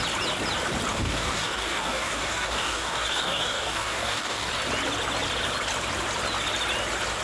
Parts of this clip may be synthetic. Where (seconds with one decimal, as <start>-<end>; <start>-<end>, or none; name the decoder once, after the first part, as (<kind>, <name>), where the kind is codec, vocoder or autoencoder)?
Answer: 0.9-4.5 (codec, DAC)